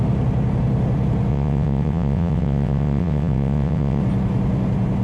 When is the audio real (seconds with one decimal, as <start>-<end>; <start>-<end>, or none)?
0.0-1.3; 4.0-5.0